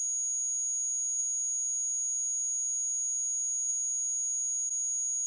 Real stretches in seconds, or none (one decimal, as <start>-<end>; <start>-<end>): 0.0-5.3